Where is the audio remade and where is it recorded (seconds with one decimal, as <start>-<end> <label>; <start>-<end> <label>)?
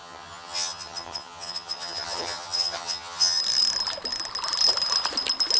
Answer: 0.0-3.4 remade; 3.4-5.6 recorded